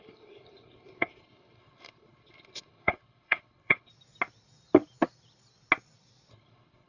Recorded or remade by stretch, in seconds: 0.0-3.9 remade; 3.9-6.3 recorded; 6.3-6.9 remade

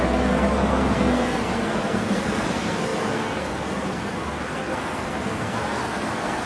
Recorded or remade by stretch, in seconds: 0.0-6.4 remade

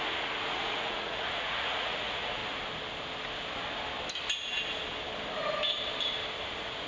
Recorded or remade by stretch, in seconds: 0.0-2.4 remade; 2.4-6.5 recorded; 6.5-6.9 remade